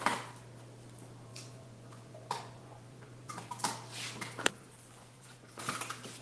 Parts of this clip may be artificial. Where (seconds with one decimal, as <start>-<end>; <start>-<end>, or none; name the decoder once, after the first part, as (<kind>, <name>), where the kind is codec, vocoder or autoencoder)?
1.3-3.5 (vocoder, Vocos); 4.5-5.6